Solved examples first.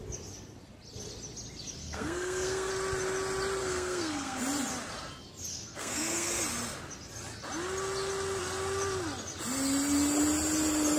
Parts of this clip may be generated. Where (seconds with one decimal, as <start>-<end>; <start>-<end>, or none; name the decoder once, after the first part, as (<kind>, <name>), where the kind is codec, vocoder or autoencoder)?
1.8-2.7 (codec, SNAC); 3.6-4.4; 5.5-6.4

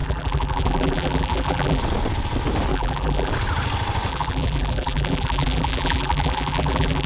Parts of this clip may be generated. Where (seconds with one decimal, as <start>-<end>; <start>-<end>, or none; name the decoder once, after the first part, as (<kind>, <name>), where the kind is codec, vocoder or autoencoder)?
0.0-1.8 (vocoder, BigVGAN v2); 2.7-3.3; 4.1-7.1

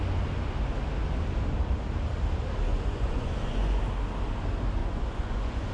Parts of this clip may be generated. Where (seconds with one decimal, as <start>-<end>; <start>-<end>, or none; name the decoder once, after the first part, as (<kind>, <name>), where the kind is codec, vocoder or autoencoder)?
2.7-3.8 (vocoder, Vocos); 4.8-5.7